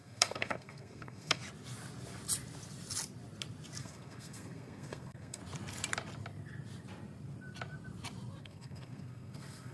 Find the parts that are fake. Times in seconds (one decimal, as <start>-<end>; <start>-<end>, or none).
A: 0.0-1.4; 3.8-5.4; 8.4-9.7